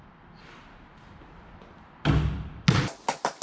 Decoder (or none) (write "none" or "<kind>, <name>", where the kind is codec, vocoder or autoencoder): none